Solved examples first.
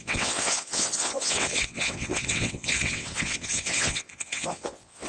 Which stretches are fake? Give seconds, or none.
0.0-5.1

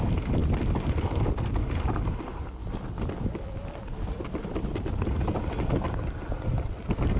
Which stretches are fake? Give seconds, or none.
none

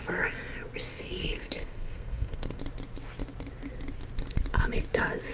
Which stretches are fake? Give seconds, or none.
0.9-2.6

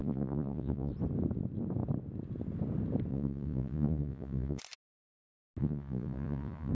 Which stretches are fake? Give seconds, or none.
0.0-0.9; 3.1-4.6; 5.6-6.7

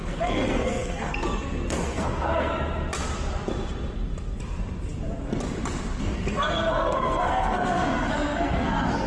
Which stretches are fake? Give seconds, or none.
0.0-2.5; 6.0-9.1

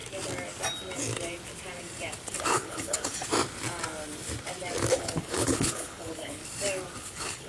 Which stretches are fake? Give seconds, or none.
2.4-3.1; 4.9-6.4; 7.0-7.5

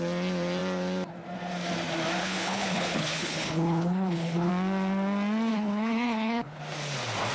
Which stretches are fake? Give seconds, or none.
2.2-4.5; 5.5-6.6